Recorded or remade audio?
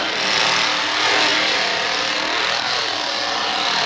recorded